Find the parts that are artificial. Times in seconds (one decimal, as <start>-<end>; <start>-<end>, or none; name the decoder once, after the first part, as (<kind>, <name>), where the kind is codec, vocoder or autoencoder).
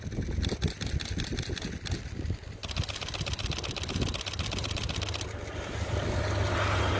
none